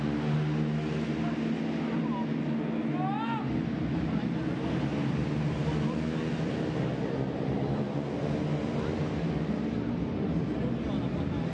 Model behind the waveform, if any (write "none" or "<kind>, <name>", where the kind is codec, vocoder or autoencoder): none